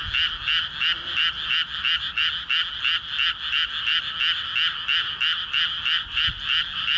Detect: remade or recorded recorded